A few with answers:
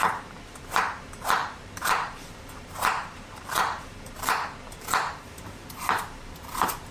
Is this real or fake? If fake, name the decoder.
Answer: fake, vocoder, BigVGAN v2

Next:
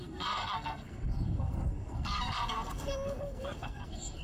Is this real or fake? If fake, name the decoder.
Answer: fake, codec, SNAC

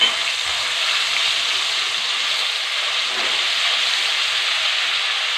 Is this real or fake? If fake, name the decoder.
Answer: real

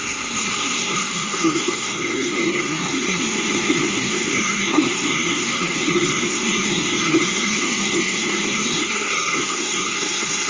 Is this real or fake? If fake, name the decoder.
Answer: fake, codec, SNAC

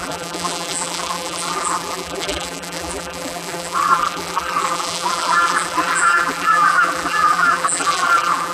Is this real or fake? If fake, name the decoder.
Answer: fake, vocoder, BigVGAN v2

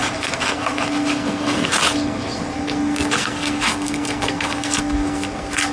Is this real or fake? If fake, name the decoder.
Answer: fake, codec, SNAC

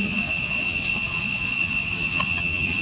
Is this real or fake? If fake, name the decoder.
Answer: fake, vocoder, Vocos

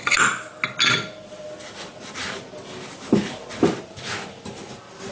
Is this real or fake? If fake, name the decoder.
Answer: real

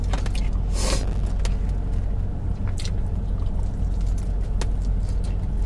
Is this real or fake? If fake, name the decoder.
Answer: real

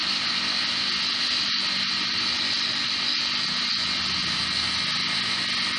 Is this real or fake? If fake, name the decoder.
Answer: real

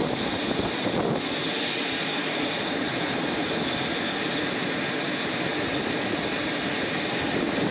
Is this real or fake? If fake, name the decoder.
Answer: real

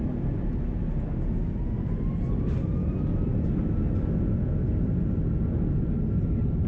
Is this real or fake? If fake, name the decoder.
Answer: real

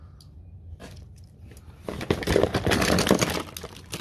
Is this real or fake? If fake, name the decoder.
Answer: real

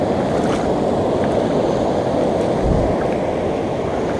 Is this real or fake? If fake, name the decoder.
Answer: real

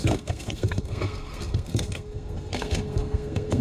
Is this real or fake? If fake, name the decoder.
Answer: fake, codec, SNAC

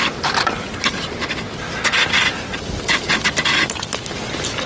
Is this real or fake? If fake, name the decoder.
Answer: real